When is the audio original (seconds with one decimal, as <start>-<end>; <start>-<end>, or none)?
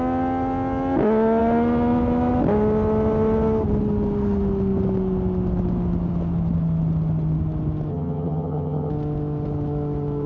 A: 0.0-7.9; 8.9-10.3